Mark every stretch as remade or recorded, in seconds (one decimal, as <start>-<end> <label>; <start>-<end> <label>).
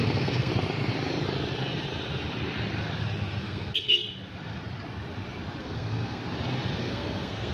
0.0-0.5 remade; 0.5-3.4 recorded; 3.4-4.0 remade; 4.0-5.6 recorded; 5.6-6.2 remade; 6.2-6.8 recorded; 6.8-7.5 remade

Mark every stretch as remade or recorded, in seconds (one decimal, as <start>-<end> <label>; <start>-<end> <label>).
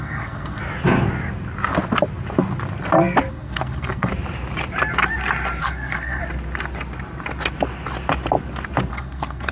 0.0-0.6 remade; 0.6-3.3 recorded; 3.3-4.1 remade; 4.1-5.6 recorded; 5.6-6.2 remade; 6.2-8.9 recorded; 8.9-9.5 remade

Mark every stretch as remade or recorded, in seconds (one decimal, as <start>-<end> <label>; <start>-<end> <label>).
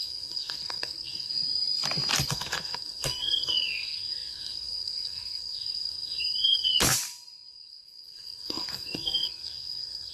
0.0-1.3 remade; 1.3-2.3 recorded; 2.3-6.7 remade; 6.7-7.5 recorded; 7.5-10.1 remade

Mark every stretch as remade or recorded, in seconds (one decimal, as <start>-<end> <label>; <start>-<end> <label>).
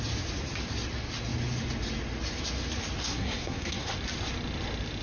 0.0-3.0 recorded; 3.0-3.9 remade; 3.9-5.0 recorded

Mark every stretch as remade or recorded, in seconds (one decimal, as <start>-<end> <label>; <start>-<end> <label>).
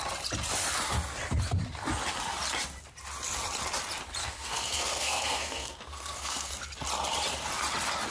0.0-4.2 recorded; 4.2-6.5 remade; 6.5-8.1 recorded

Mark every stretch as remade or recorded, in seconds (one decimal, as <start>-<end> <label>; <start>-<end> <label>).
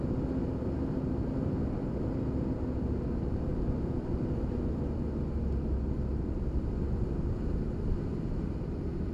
0.0-9.1 recorded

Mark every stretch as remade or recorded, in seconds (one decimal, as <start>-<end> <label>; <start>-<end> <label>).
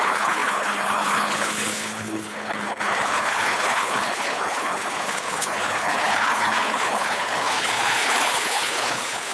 0.0-9.3 remade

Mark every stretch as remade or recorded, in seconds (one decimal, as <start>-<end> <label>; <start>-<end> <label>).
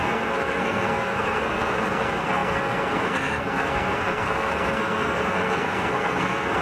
0.0-6.6 remade